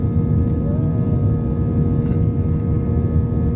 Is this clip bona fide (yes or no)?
yes